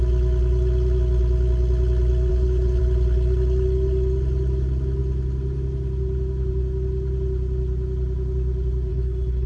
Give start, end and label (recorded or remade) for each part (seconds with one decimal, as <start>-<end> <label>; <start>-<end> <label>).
0.0-2.3 recorded; 2.3-2.8 remade; 2.8-8.9 recorded; 8.9-9.5 remade